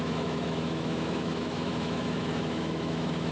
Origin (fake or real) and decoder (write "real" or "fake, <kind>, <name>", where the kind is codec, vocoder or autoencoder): fake, autoencoder, DAC-VAE